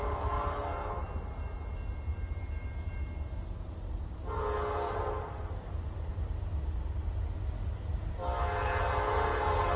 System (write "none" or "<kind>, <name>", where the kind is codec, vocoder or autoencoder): none